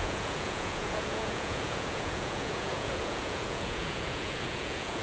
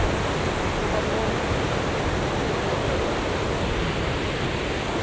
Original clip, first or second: second